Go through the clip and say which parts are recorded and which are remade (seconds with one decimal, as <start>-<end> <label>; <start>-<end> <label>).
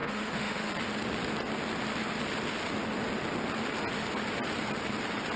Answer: 0.0-0.7 remade; 0.7-5.4 recorded